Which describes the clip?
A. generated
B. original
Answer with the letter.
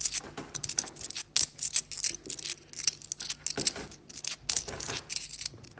B